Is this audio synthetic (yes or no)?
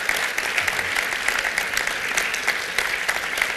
no